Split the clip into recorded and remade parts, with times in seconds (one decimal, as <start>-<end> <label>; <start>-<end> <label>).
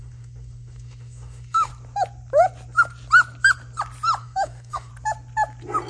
0.0-1.7 remade; 1.7-4.2 recorded; 4.2-4.9 remade; 4.9-5.9 recorded